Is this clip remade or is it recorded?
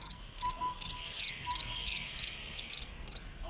remade